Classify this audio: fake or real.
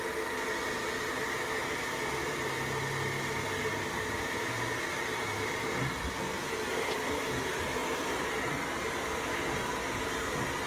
real